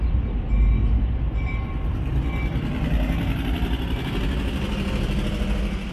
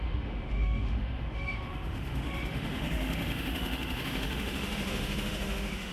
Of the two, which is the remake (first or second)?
second